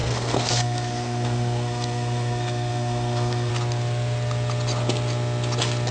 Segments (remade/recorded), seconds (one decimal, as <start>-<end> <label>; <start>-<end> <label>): 0.0-3.5 remade; 3.5-5.9 recorded